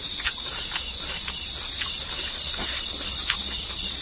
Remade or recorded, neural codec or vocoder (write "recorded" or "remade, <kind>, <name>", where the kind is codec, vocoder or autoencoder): recorded